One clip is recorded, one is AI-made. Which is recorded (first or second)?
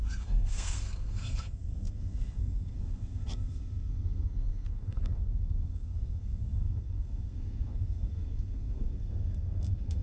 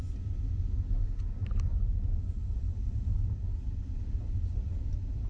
second